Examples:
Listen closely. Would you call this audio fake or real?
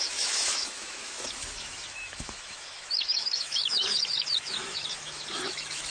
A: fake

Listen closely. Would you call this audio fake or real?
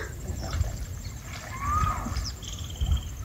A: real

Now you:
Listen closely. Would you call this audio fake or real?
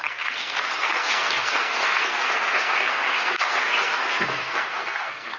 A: fake